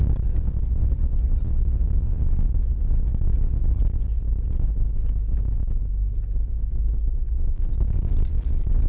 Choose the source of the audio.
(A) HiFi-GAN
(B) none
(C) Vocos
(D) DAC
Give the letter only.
B